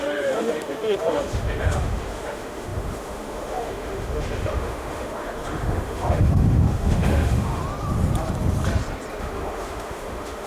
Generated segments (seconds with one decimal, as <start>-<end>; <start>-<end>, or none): 0.0-7.6; 9.2-10.5